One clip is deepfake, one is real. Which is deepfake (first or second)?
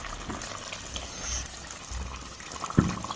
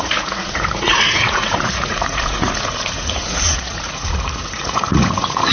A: second